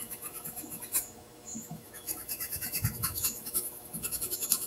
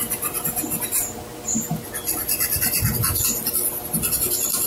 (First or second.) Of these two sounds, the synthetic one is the first